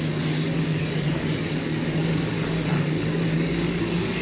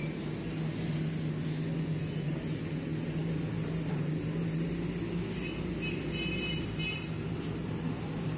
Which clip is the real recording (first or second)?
second